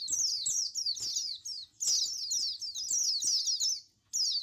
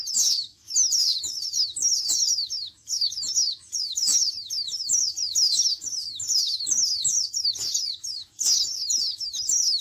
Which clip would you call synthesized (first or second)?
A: second